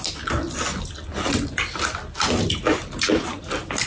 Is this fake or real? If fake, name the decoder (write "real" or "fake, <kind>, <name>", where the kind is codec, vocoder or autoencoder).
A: real